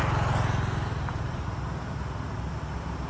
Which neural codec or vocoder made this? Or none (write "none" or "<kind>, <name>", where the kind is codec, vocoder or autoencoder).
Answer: none